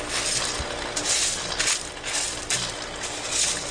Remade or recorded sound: recorded